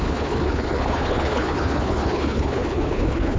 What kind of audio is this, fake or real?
fake